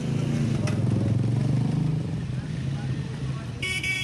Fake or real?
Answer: real